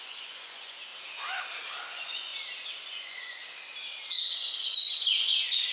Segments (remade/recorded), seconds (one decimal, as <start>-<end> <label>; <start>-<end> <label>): 0.0-0.9 remade; 0.9-1.8 recorded; 1.8-2.3 remade; 2.3-2.9 recorded; 2.9-3.4 remade; 3.4-4.1 recorded; 4.1-5.7 remade